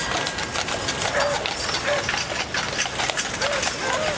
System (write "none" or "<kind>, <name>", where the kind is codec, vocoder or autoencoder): none